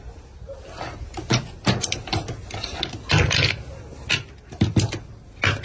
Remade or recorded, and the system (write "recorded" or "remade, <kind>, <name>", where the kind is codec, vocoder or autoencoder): recorded